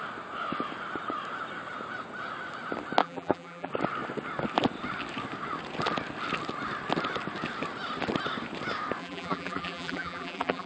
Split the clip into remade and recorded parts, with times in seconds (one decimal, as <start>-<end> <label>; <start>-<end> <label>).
0.0-3.0 recorded; 3.0-3.7 remade; 3.7-9.0 recorded; 9.0-10.7 remade